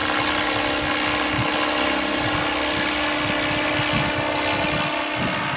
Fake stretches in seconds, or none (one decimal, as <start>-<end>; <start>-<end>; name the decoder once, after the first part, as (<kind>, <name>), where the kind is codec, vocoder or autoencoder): none